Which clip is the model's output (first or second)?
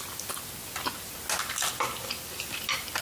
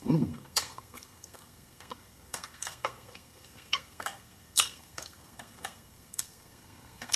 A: second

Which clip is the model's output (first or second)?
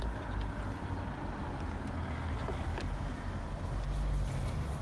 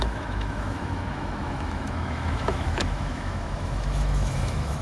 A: second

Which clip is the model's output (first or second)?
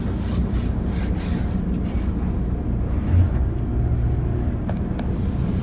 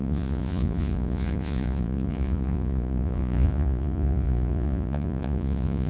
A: second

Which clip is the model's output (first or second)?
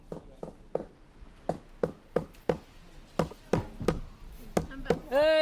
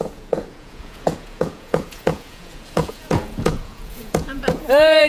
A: second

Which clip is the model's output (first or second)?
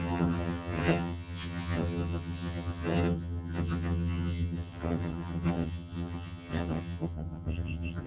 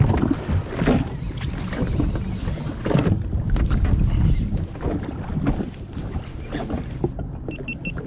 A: first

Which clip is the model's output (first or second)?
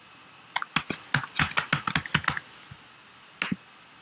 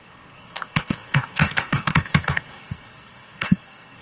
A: second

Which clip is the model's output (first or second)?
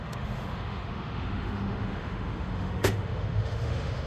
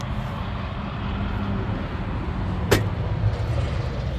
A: first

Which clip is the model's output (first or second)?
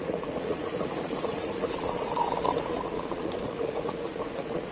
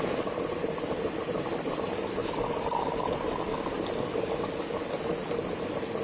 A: first